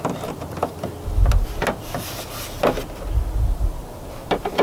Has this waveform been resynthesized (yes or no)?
no